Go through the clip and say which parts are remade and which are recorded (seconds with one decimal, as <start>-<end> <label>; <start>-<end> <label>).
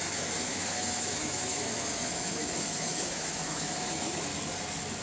0.0-4.3 remade; 4.3-5.0 recorded